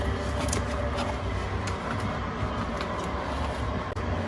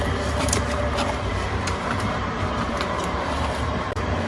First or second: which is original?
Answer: first